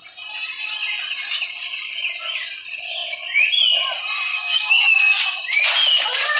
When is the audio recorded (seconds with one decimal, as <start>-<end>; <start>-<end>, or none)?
0.0-4.3; 5.0-6.4